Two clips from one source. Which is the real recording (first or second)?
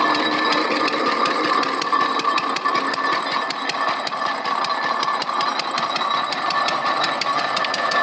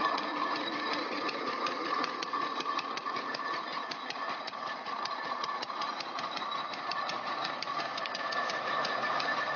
first